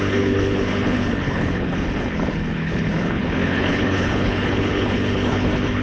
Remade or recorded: remade